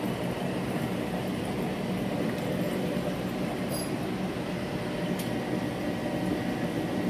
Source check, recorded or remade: recorded